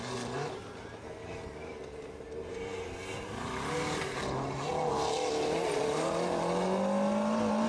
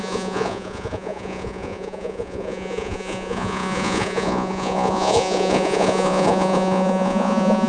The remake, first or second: second